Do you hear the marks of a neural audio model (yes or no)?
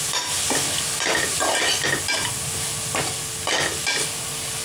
no